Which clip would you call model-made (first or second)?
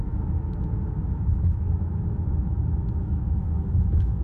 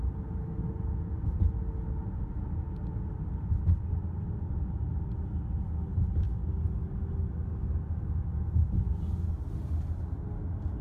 first